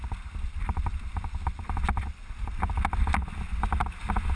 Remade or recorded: recorded